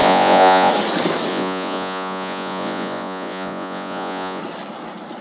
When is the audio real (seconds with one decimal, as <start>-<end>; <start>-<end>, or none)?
0.7-1.3; 4.4-5.2